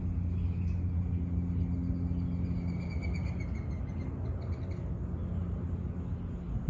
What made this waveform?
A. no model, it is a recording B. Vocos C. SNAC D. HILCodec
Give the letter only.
A